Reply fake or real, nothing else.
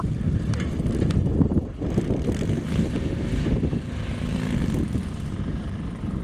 real